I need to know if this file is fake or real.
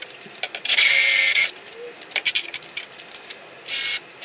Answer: real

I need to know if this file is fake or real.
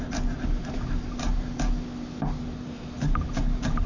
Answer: real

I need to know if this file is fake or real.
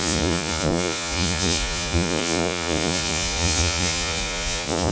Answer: fake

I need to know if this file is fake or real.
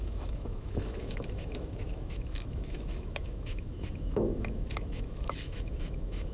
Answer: fake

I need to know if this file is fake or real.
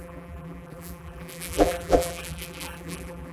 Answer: fake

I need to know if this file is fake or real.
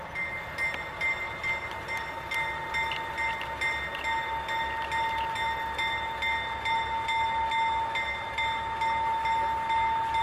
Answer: real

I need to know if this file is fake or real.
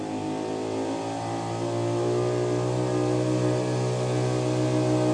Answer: real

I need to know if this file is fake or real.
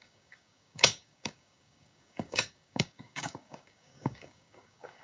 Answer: fake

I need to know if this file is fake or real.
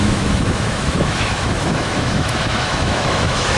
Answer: fake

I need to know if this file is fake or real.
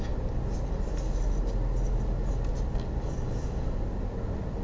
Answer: real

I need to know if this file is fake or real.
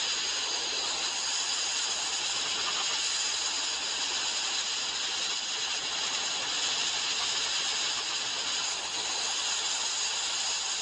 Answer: real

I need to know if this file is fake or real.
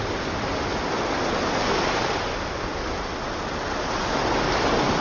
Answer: real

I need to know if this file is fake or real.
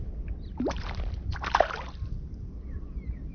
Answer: real